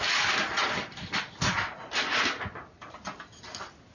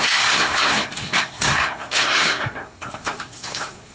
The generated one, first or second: second